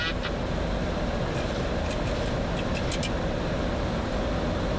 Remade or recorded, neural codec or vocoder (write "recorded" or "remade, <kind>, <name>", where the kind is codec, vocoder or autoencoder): recorded